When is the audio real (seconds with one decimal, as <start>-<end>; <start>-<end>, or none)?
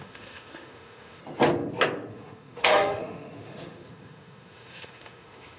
1.2-2.1